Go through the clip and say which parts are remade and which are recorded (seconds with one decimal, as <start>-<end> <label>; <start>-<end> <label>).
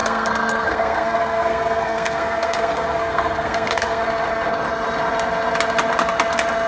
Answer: 0.0-4.0 remade; 4.0-6.7 recorded